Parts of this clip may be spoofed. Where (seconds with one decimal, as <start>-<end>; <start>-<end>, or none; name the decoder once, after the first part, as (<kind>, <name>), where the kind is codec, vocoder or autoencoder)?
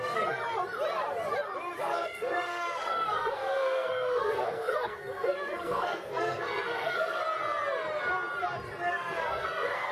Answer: 0.0-0.4 (codec, SNAC); 1.8-7.2; 8.9-9.9